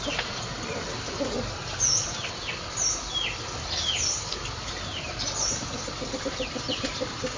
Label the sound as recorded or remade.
recorded